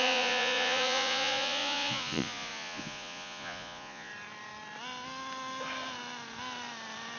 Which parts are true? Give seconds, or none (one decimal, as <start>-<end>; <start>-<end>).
4.1-7.2